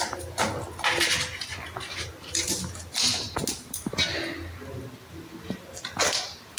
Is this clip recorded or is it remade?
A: recorded